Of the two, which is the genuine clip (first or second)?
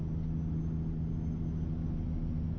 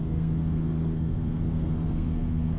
first